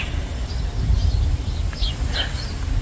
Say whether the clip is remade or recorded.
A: recorded